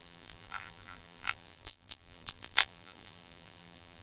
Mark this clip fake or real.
fake